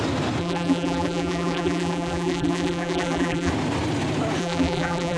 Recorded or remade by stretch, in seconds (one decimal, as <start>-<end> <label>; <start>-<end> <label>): 0.0-0.4 recorded; 0.4-3.5 remade; 3.5-4.4 recorded; 4.4-5.2 remade